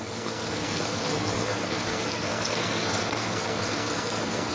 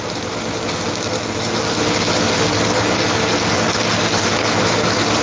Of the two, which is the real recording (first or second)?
second